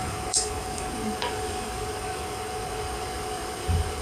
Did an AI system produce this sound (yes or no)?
yes